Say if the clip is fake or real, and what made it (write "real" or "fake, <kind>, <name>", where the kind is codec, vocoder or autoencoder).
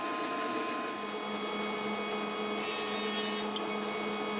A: real